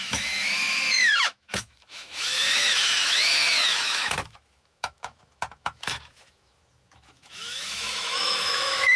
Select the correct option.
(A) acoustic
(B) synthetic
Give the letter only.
B